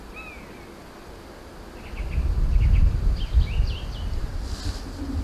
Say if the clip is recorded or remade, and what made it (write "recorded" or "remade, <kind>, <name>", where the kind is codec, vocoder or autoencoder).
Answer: recorded